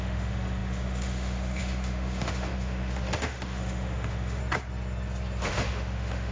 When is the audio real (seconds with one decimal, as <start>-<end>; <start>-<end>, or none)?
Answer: 4.4-5.4